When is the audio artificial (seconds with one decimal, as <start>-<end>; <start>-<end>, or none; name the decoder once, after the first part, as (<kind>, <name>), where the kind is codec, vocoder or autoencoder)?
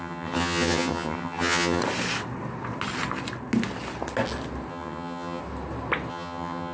0.0-1.8 (vocoder, HiFi-GAN); 4.7-5.4; 6.1-6.7